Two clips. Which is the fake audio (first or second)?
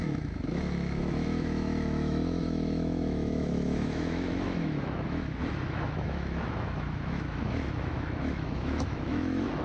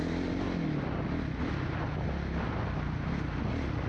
first